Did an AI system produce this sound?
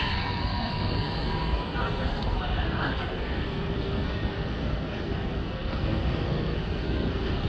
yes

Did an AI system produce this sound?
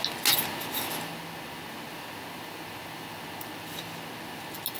no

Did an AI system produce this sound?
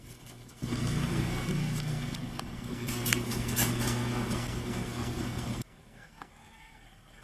yes